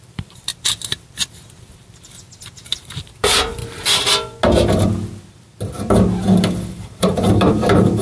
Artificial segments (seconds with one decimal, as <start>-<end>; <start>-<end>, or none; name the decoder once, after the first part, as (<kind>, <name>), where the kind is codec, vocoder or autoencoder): 0.0-0.5 (vocoder, BigVGAN v2); 2.4-3.6; 6.7-8.0